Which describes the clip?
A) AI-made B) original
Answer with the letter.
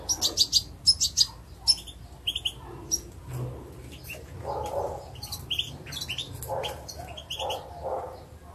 B